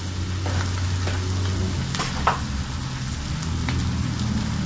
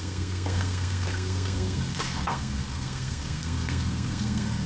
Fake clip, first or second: second